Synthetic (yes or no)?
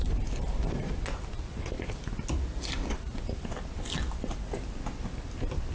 no